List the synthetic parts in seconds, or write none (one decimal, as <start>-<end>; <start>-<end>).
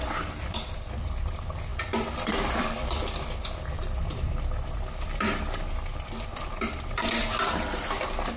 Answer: 0.0-8.4